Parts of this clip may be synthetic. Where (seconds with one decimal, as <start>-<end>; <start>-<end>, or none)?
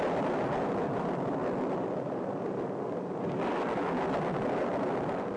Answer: 0.0-1.4; 4.6-5.4